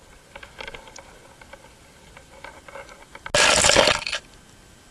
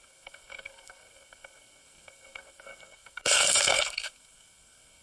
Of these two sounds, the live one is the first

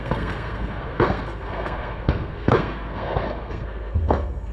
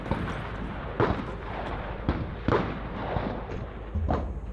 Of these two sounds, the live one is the second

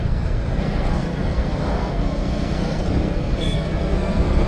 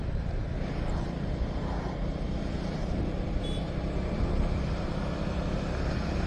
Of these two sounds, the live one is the second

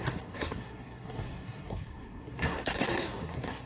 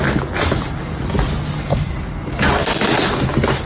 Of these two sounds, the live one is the second